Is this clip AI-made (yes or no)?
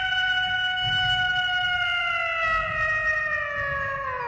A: no